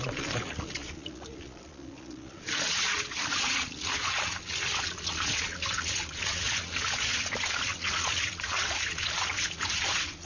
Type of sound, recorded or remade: remade